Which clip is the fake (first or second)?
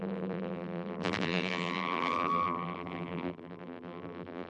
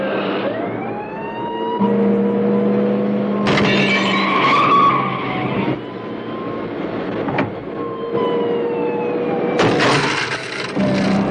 first